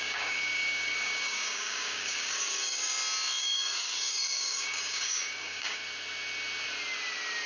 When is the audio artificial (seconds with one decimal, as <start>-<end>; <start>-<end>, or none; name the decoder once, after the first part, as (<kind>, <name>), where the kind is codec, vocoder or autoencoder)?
0.0-2.9 (codec, DAC); 3.4-5.8